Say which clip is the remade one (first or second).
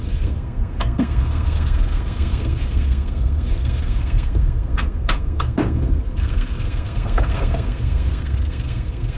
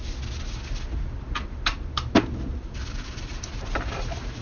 first